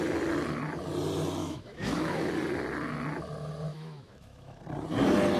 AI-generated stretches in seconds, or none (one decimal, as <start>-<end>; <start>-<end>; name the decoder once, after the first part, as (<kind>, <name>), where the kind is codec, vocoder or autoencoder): 1.4-2.3 (autoencoder, DAC-VAE); 3.7-4.6